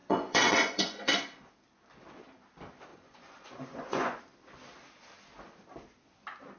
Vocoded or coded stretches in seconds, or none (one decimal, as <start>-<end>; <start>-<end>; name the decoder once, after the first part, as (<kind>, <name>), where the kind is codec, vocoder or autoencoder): 0.0-1.1 (vocoder, Vocos); 2.9-4.2